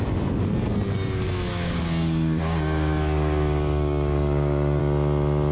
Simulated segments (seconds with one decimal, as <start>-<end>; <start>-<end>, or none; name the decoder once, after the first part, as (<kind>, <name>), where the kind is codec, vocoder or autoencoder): 1.5-4.8 (codec, DAC)